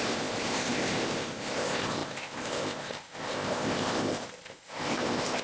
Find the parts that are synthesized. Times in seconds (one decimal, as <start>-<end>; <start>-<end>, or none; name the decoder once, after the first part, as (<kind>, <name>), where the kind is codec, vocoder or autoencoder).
0.0-5.4 (codec, ZipCodec)